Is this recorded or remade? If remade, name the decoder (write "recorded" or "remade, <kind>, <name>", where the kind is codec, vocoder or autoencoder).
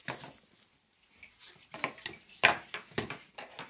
recorded